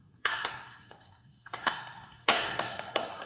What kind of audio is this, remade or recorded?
remade